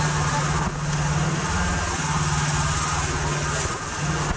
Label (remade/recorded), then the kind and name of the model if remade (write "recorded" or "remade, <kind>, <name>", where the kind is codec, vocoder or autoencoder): recorded